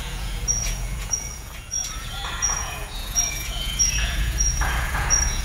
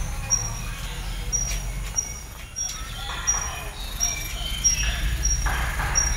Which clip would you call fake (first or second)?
first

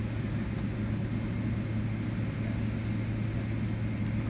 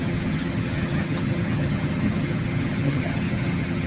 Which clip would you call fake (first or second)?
second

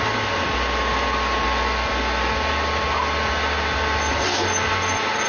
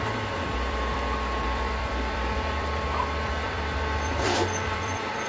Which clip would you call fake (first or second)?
second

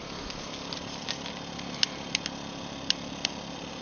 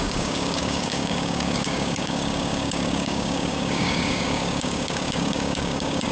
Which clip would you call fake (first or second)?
second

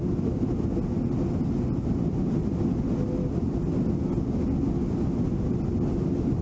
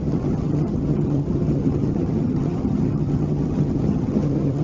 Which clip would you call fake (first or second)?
second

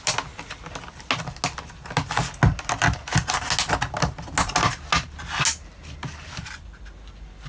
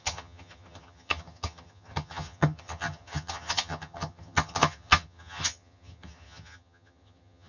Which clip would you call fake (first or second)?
second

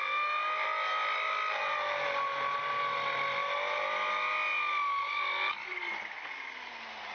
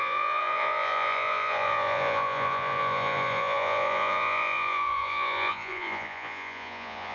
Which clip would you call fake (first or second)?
second